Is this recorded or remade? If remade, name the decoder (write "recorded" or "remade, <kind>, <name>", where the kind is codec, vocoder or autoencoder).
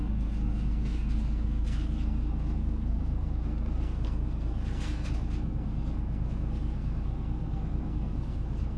remade, codec, SNAC